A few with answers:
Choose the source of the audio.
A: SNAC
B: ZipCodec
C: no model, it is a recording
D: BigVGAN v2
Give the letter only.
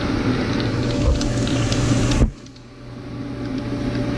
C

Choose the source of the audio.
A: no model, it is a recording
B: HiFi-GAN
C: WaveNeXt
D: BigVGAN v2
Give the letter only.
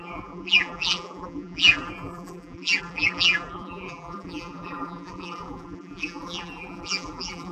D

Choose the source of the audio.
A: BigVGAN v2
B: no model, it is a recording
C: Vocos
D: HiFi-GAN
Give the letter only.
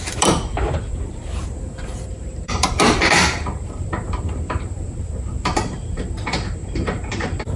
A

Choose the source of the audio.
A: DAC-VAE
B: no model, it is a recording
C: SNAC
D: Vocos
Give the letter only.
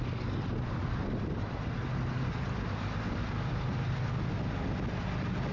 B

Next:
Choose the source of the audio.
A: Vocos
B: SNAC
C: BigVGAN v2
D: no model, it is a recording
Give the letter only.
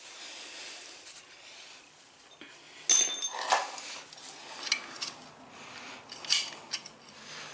D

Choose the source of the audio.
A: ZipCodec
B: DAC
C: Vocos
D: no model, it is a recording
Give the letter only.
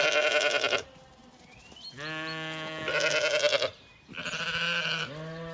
D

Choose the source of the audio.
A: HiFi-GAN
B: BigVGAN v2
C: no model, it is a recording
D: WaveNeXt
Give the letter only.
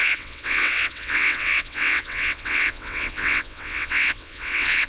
D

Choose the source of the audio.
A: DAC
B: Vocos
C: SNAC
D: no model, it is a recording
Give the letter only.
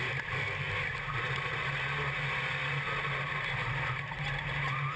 D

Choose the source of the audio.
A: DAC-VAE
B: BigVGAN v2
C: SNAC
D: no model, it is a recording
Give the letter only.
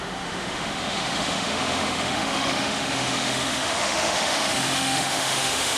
A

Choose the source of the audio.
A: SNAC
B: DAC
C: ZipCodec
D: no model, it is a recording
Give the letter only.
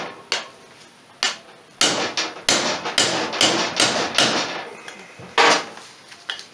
D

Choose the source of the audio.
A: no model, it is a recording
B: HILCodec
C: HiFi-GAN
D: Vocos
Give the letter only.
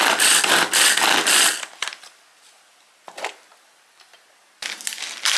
A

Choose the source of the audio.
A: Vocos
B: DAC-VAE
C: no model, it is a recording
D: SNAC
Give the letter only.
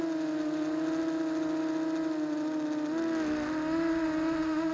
C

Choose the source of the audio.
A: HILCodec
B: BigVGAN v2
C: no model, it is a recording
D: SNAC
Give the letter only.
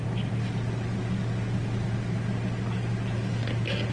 C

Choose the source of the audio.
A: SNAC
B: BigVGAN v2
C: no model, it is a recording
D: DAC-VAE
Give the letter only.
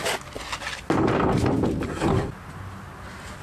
C